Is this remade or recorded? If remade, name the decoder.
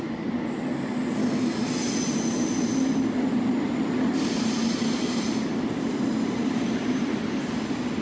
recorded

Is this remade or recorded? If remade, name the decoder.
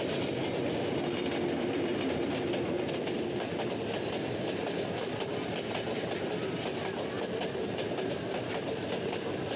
recorded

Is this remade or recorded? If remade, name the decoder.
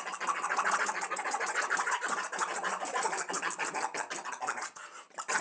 recorded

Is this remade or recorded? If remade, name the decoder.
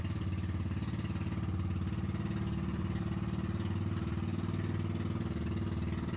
recorded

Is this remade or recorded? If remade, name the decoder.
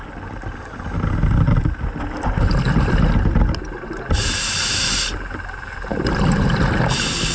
recorded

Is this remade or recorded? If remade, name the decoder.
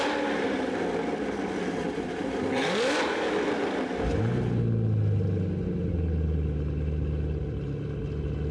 recorded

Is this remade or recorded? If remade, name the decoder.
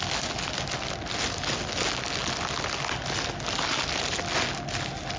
recorded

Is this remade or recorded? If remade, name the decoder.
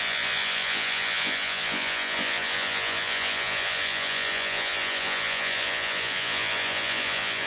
remade, vocoder, Vocos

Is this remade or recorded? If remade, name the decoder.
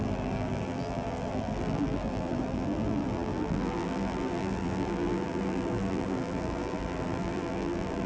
remade, vocoder, BigVGAN v2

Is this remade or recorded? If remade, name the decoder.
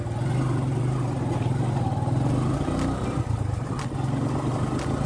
recorded